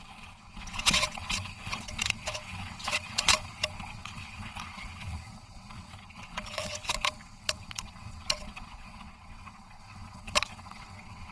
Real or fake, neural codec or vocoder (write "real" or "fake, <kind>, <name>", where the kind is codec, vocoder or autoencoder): fake, vocoder, WaveNeXt